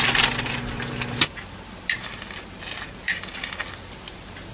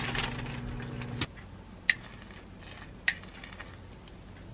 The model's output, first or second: first